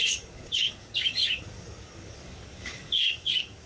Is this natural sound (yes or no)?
no